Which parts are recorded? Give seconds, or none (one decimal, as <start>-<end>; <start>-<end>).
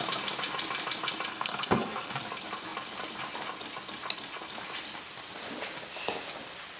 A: 0.0-1.3; 2.2-6.8